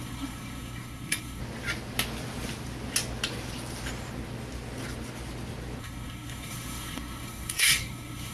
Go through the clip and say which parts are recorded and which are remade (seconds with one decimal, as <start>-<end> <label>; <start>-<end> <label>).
0.0-1.4 remade; 1.4-5.8 recorded; 5.8-8.3 remade